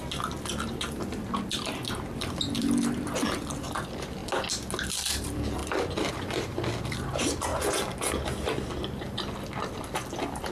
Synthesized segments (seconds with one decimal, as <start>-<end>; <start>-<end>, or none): 0.0-1.8; 2.6-4.2; 4.9-5.6; 6.1-7.5; 9.6-10.5